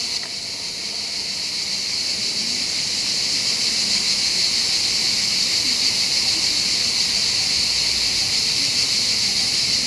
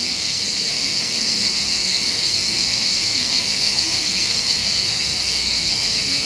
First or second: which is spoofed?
second